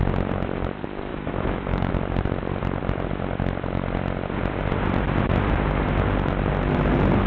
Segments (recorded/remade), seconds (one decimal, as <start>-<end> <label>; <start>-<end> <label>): 0.0-1.1 recorded; 1.1-1.9 remade; 1.9-7.3 recorded